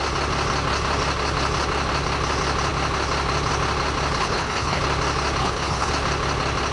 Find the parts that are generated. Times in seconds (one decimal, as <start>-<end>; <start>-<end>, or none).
4.2-4.8; 5.4-5.9